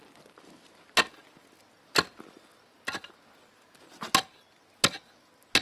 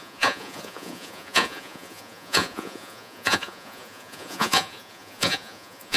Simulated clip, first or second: second